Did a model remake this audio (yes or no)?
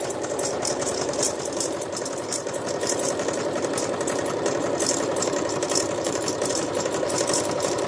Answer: yes